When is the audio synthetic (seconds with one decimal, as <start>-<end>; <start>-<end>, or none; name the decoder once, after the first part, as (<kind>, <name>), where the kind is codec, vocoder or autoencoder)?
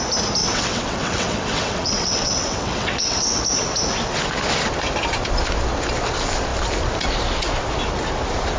0.4-3.4 (vocoder, WaveNeXt)